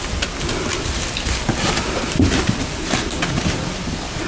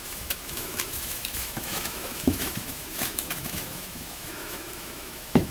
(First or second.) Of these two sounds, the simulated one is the second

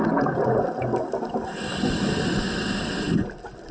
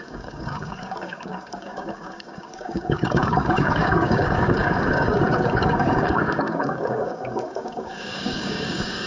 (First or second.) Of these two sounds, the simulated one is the second